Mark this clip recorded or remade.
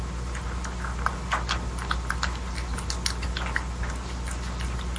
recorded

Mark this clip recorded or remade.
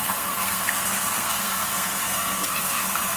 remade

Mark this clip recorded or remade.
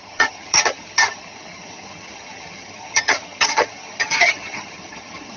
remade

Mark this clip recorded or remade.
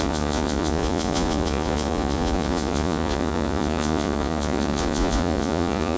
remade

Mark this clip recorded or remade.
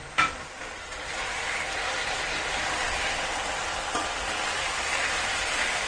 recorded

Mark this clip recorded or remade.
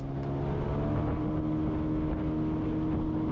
recorded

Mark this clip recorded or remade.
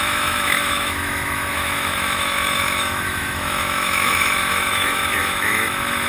remade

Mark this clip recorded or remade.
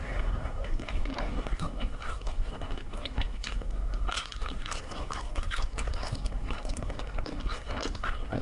remade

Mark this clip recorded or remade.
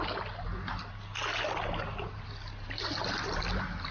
recorded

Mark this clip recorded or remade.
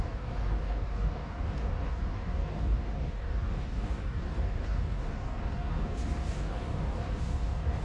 remade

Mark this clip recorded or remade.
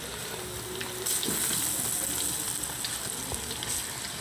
recorded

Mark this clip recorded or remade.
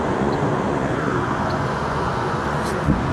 remade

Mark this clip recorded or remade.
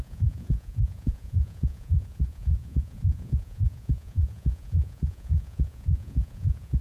remade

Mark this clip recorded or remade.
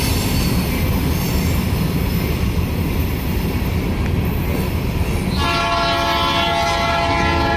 recorded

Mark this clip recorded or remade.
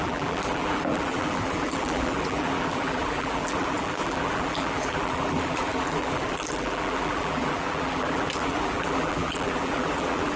remade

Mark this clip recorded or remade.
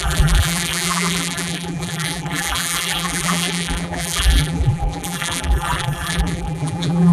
remade